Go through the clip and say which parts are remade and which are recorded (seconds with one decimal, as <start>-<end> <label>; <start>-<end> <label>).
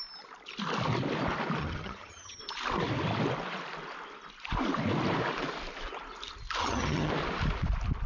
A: 0.0-1.6 recorded; 1.6-2.4 remade; 2.4-6.6 recorded; 6.6-7.1 remade; 7.1-8.1 recorded